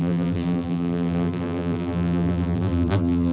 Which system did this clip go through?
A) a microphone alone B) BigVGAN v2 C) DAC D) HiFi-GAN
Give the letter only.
B